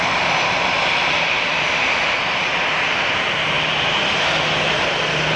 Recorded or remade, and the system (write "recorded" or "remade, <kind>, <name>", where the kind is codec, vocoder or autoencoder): recorded